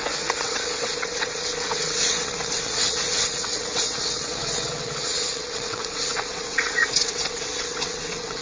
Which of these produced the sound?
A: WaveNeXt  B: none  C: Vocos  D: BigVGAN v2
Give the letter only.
A